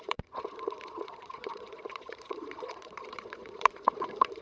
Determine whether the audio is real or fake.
fake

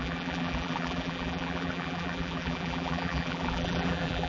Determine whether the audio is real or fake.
fake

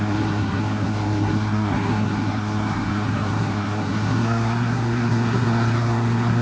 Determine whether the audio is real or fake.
fake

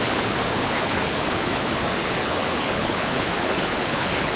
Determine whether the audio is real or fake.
fake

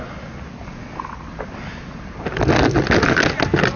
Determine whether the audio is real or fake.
real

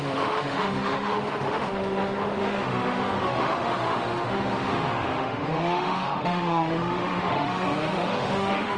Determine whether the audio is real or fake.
fake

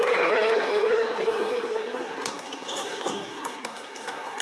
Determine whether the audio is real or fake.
fake